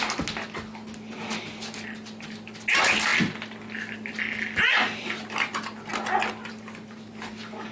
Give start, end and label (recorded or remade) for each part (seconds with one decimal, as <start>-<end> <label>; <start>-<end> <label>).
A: 0.0-7.7 recorded